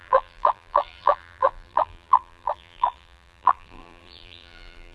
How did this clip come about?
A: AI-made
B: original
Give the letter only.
A